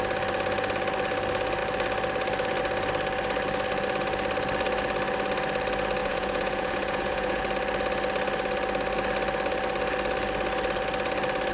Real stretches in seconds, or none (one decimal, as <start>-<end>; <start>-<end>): 0.0-6.0; 7.4-11.5